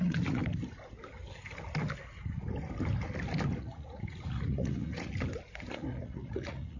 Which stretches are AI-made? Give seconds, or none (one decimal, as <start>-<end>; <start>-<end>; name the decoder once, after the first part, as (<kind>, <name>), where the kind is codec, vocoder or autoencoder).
0.0-0.4 (vocoder, Vocos); 3.6-5.1; 5.7-6.8